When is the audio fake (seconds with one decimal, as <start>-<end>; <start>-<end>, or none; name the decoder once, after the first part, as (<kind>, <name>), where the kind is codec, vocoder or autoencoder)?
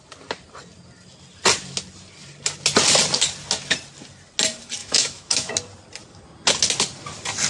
4.8-5.5 (autoencoder, DAC-VAE)